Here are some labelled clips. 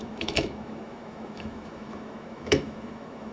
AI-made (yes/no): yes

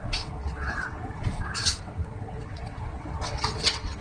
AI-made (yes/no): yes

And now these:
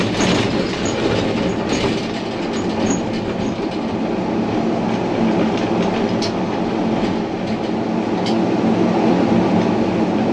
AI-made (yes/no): no